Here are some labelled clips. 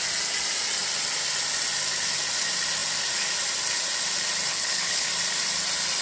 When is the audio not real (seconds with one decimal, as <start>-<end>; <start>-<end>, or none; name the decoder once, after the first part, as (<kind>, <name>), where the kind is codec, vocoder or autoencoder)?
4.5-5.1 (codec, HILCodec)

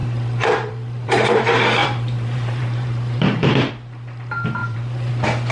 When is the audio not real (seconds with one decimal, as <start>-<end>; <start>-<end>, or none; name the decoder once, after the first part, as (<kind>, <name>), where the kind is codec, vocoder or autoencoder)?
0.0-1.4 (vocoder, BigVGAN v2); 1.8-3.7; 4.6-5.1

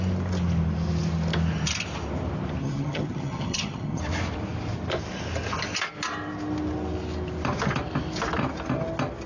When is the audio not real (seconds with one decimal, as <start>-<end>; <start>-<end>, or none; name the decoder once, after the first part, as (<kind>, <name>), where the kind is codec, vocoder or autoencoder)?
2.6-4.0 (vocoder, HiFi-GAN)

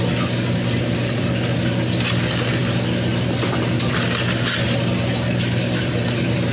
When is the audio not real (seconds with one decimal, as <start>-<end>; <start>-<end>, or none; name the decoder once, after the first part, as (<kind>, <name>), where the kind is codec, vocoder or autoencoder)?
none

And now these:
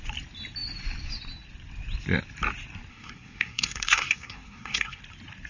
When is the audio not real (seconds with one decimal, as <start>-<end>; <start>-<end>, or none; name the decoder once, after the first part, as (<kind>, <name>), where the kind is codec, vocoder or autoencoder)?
2.9-5.0 (codec, SNAC)